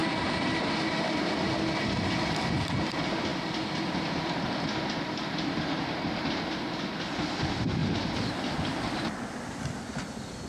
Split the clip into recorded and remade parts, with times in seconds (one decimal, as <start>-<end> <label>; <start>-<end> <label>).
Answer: 0.0-0.6 remade; 0.6-3.3 recorded; 3.3-5.8 remade; 5.8-7.8 recorded; 7.8-9.5 remade; 9.5-10.5 recorded